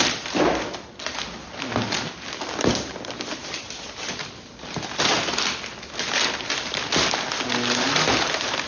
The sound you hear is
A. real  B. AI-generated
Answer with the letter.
A